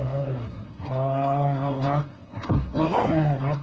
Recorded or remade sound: remade